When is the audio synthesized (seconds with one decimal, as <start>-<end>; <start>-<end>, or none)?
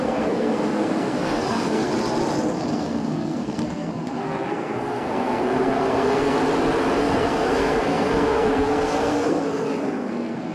0.0-1.9; 2.5-6.4; 7.0-10.5